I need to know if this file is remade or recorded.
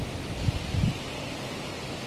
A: recorded